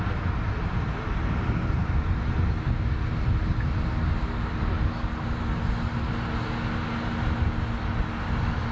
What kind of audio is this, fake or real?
real